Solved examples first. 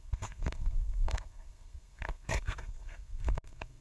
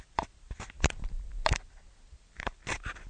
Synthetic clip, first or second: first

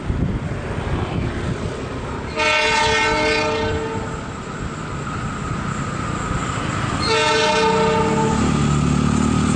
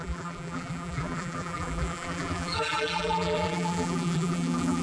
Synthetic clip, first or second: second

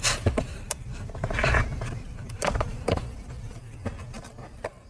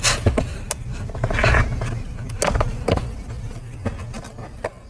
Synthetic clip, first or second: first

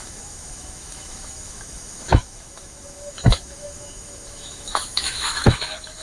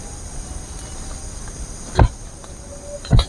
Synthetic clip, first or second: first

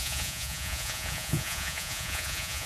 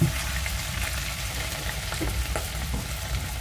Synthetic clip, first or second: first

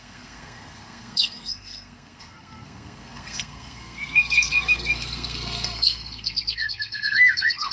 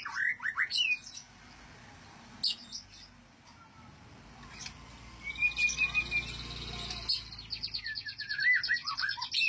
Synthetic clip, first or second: first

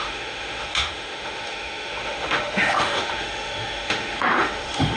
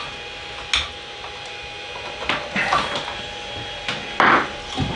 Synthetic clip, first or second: first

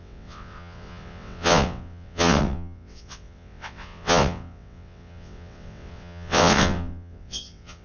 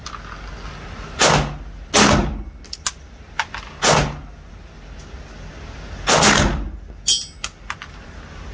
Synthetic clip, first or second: first